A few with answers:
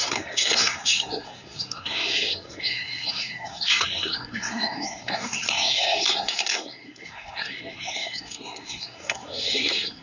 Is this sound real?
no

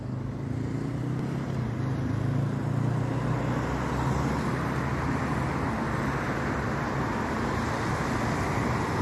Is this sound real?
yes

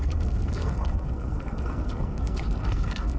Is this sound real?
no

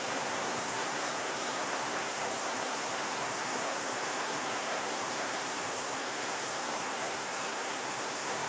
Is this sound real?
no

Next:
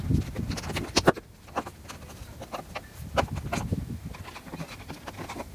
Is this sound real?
yes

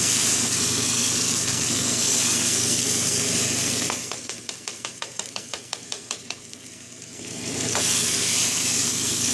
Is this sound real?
no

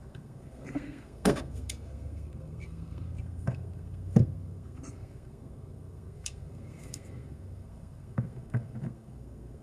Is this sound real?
no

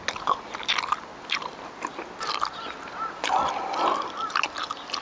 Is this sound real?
yes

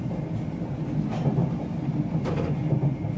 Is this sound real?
yes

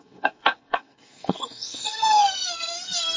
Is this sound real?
no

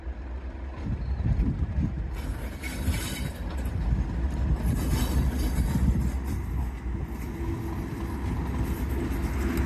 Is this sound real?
yes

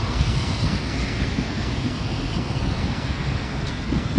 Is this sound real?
no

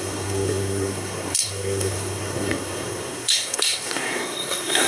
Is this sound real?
no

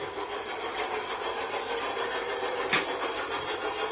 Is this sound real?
yes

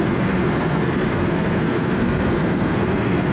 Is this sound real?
no